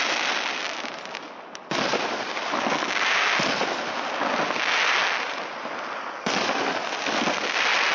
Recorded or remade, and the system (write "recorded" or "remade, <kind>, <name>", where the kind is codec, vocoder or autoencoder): recorded